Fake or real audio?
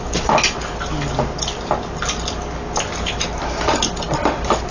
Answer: real